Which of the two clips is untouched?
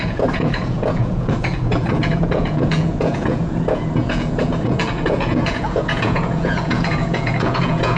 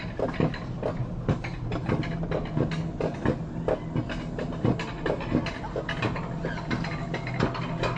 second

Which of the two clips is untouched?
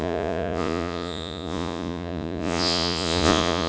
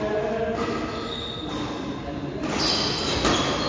second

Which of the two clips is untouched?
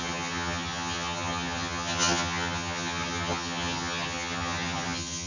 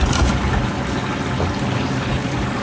second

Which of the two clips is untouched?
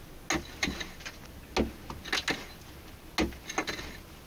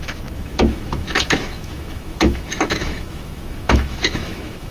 first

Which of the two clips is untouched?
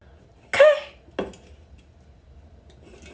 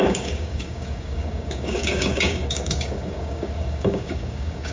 first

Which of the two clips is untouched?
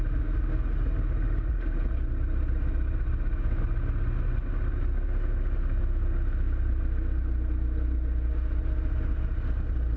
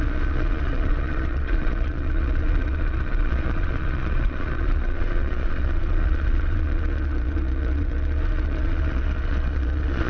first